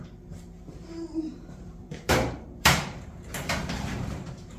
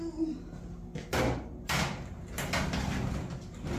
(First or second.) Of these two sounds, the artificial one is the first